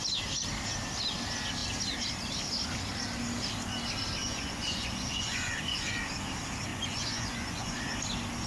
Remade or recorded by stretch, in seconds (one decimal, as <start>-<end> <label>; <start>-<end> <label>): 0.0-4.2 recorded; 4.2-6.0 remade; 6.0-6.7 recorded; 6.7-7.8 remade; 7.8-8.5 recorded